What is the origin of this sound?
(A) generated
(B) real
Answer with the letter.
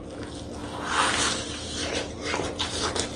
B